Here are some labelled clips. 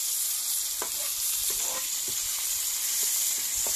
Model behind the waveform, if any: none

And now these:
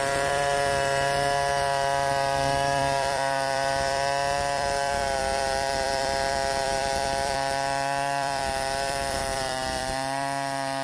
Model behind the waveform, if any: vocoder, BigVGAN v2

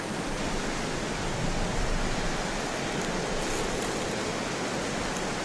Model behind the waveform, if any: none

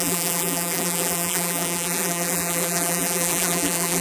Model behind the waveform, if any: vocoder, BigVGAN v2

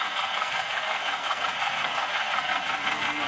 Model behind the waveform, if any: codec, SNAC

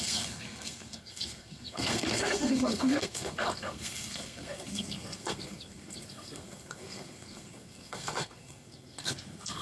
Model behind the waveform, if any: codec, SNAC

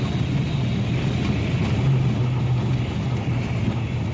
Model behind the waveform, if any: none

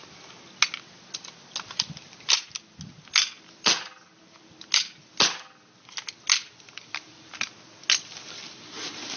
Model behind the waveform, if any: none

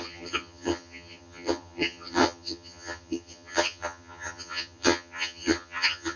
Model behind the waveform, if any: vocoder, HiFi-GAN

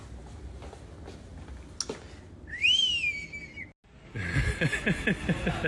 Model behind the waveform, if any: none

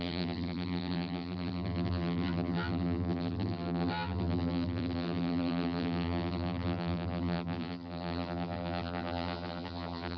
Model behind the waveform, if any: vocoder, BigVGAN v2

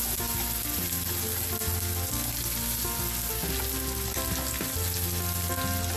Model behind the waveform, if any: none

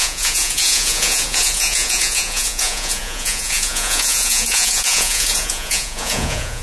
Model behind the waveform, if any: vocoder, Vocos